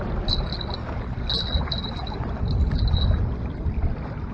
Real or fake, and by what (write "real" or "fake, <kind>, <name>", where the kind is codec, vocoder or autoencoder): real